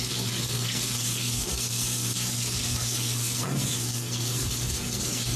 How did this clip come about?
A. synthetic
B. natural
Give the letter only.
A